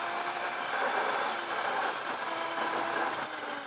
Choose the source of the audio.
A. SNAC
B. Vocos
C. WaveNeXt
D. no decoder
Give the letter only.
D